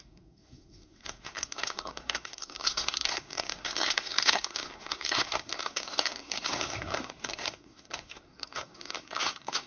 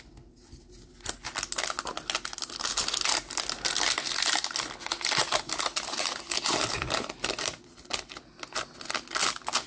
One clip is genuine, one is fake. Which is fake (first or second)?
first